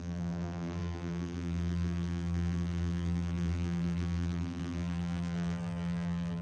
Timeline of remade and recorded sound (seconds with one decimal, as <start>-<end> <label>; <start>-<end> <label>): 0.0-6.4 remade